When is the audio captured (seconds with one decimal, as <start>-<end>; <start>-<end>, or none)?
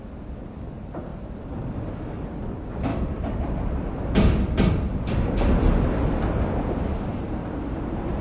0.0-1.1; 1.7-2.9; 5.7-8.2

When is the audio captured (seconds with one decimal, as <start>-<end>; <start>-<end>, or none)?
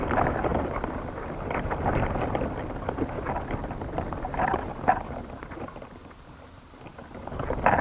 0.0-0.5; 4.4-7.8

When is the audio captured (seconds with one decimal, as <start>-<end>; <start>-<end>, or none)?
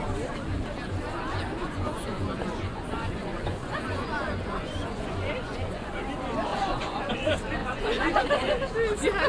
0.0-1.6; 5.9-6.5; 7.1-7.6; 8.2-9.3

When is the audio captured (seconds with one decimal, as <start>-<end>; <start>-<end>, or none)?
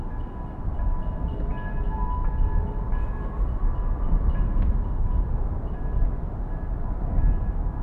0.0-7.8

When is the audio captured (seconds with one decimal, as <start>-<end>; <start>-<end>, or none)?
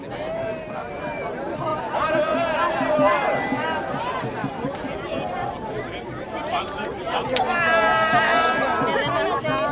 0.0-6.4; 7.4-9.7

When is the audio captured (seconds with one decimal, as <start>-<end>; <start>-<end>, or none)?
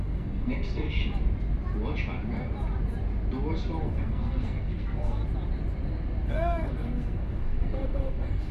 1.0-3.8; 5.2-6.3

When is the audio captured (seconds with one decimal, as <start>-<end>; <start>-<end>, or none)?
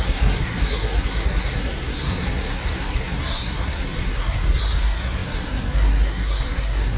none